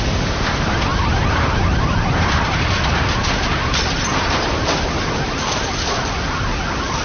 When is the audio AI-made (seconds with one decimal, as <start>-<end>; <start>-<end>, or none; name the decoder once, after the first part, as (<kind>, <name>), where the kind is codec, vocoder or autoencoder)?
0.9-2.7 (vocoder, BigVGAN v2); 4.1-4.8